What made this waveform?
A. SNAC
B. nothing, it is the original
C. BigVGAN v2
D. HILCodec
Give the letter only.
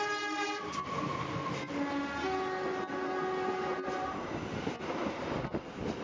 B